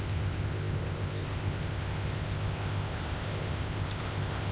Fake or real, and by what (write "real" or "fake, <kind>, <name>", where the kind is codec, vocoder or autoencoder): fake, codec, ZipCodec